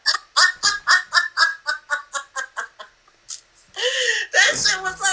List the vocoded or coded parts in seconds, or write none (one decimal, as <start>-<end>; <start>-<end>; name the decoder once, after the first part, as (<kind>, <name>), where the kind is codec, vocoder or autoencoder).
none

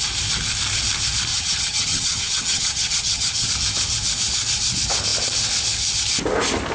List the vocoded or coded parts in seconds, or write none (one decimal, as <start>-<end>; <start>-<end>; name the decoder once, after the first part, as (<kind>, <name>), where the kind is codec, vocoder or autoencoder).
1.3-3.5 (vocoder, HiFi-GAN)

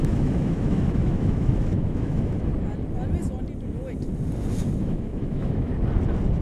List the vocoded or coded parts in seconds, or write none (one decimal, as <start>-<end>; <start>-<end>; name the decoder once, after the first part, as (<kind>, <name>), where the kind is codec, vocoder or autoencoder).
0.0-2.5 (autoencoder, DAC-VAE); 4.8-5.7

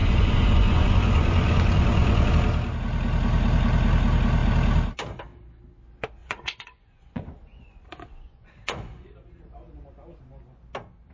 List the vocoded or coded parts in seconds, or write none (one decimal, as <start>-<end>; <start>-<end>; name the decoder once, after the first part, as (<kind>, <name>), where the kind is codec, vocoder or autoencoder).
0.0-2.3 (vocoder, Vocos); 6.2-9.1

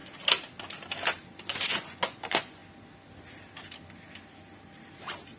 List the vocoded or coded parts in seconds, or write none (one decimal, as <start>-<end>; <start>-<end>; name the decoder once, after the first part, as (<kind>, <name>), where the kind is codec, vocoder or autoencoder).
1.5-2.6 (vocoder, Vocos)

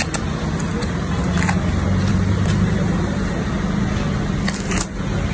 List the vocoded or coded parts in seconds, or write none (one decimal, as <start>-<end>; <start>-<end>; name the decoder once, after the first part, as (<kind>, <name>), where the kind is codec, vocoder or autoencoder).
0.7-1.6 (vocoder, BigVGAN v2); 2.1-3.3

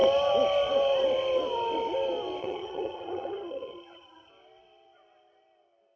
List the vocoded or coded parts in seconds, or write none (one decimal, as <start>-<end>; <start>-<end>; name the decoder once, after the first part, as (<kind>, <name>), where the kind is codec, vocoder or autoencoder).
2.4-4.3 (vocoder, HiFi-GAN)